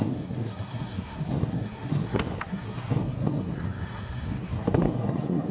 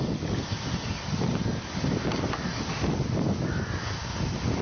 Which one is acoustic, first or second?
second